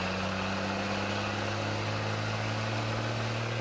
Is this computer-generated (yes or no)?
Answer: no